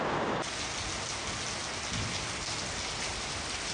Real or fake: real